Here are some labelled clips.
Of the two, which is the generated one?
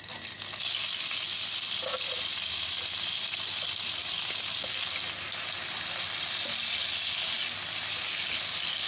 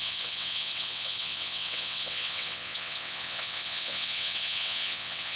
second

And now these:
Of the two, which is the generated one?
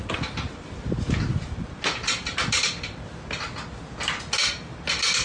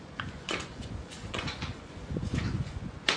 second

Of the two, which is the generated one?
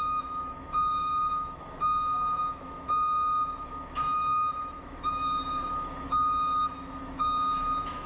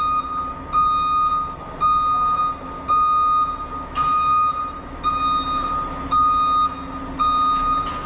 first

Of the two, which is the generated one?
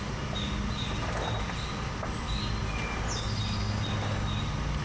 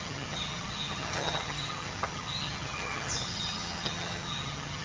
second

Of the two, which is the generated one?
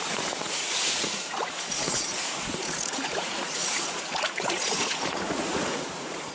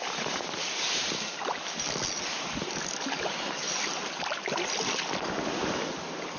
first